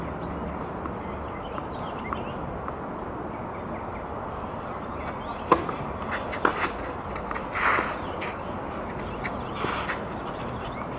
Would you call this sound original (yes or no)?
yes